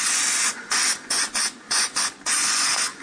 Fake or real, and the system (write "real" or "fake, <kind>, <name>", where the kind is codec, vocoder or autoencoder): fake, vocoder, Vocos